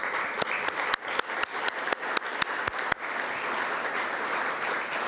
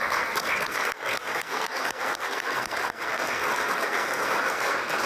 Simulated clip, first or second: second